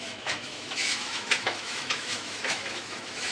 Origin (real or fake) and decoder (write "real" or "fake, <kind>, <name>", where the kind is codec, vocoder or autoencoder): fake, autoencoder, DAC-VAE